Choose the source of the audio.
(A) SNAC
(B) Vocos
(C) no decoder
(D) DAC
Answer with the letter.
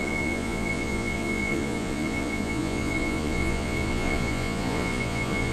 B